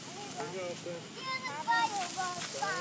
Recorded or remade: recorded